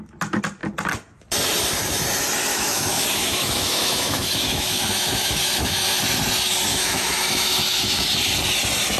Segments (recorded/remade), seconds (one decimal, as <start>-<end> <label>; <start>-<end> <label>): 0.0-2.5 recorded; 2.5-6.0 remade; 6.0-6.7 recorded; 6.7-8.0 remade; 8.0-9.0 recorded